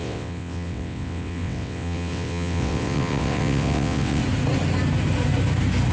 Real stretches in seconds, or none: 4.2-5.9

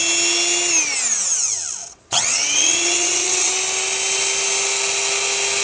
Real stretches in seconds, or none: 0.0-1.8; 3.5-5.6

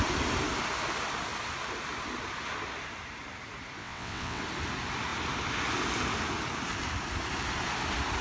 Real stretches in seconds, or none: 0.0-3.8; 4.4-8.2

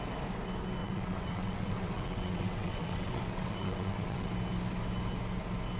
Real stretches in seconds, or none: 0.0-0.8; 4.3-5.8

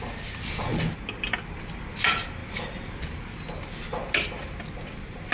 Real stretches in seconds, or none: 0.0-5.3